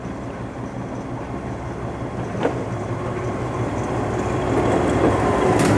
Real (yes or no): yes